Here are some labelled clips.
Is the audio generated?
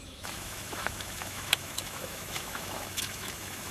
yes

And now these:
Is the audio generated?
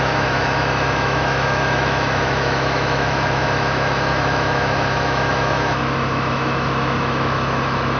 yes